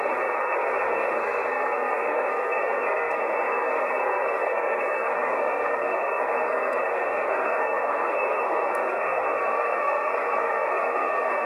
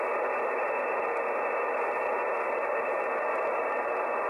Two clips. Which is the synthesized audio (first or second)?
first